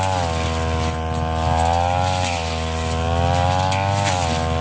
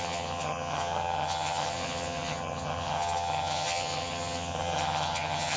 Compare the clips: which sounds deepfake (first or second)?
second